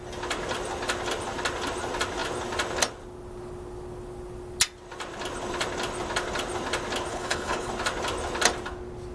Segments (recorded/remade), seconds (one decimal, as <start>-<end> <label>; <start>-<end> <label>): 0.0-7.1 recorded; 7.1-7.7 remade; 7.7-9.1 recorded